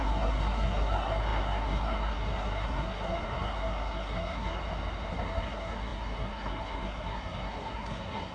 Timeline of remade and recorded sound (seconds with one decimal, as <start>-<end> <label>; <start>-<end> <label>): 0.0-4.6 remade; 4.6-5.1 recorded; 5.1-8.3 remade